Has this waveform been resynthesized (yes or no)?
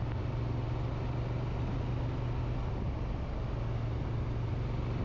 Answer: no